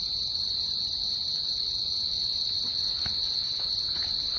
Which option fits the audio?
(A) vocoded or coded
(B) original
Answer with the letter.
B